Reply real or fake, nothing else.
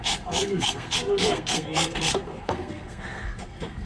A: fake